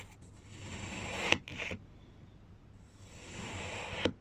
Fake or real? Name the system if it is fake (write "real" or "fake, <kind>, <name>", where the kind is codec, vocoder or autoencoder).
real